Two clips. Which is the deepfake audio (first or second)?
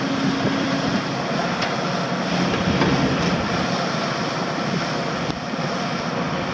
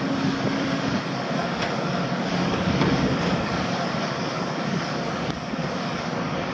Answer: second